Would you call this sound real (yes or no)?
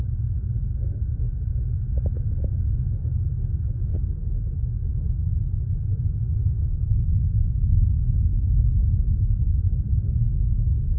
yes